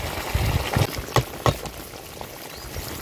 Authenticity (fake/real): real